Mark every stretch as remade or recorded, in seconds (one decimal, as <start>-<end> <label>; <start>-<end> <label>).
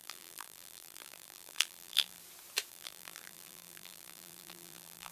0.0-2.2 remade; 2.2-2.7 recorded; 2.7-5.1 remade